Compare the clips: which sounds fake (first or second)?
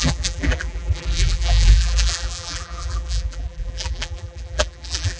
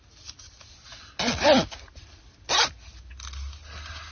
first